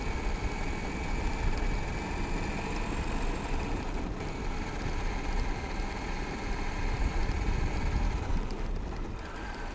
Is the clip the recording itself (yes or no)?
yes